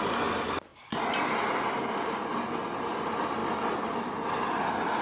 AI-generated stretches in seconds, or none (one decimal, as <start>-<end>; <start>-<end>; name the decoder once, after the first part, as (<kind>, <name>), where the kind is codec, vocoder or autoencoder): none